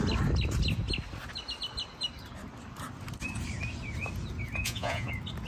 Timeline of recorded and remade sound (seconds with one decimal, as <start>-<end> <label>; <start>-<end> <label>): 0.0-4.6 recorded; 4.6-5.1 remade; 5.1-5.5 recorded